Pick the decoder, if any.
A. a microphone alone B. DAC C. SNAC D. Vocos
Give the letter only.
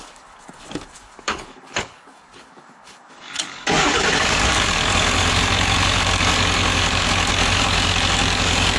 B